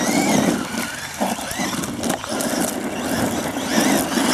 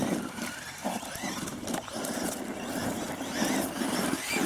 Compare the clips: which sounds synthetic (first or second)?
second